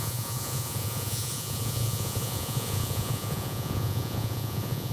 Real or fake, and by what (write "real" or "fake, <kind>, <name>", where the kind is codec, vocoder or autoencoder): fake, vocoder, Vocos